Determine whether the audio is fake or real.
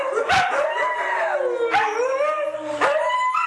real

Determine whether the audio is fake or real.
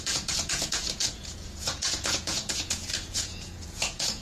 fake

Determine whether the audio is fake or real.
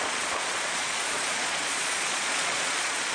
fake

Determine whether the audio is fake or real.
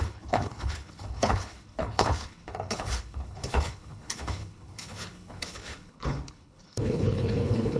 fake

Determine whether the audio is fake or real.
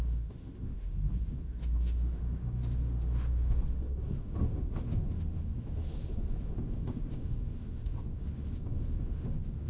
fake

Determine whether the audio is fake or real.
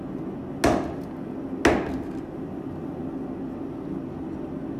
real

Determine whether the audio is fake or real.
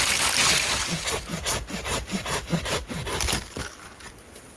real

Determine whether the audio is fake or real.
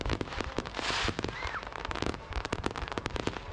fake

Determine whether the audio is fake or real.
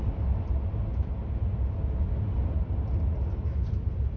real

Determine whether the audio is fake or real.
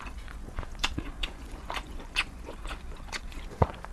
fake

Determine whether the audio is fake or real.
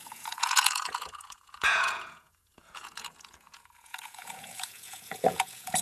fake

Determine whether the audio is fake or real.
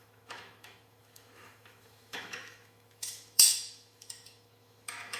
fake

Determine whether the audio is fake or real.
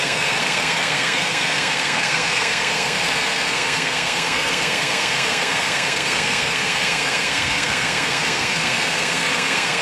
fake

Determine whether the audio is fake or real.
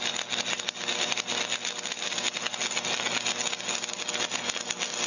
real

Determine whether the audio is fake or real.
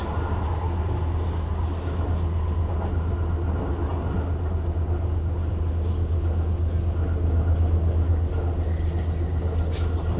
real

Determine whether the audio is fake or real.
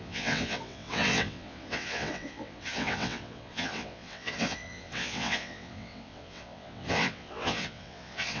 fake